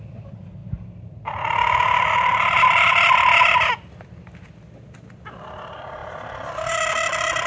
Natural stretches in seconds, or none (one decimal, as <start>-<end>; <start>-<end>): 0.0-7.5

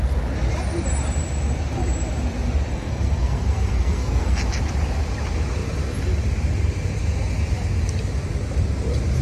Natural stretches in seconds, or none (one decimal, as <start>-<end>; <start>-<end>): 0.0-2.7; 4.4-9.2